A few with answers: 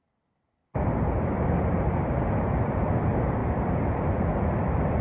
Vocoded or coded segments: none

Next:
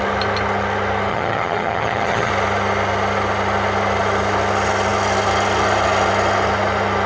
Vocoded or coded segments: 1.1-2.3 (vocoder, HiFi-GAN)

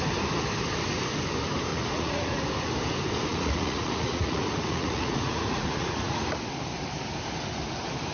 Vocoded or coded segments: 1.7-2.4 (vocoder, Vocos); 3.3-6.2

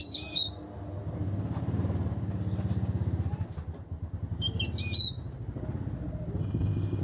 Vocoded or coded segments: 6.4-7.0 (codec, ZipCodec)

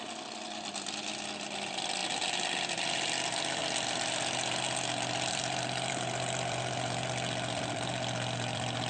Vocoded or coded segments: 0.0-2.0 (vocoder, BigVGAN v2); 2.7-3.6; 5.3-8.9

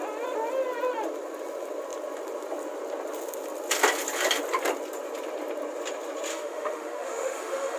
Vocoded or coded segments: 6.3-7.8 (autoencoder, DAC-VAE)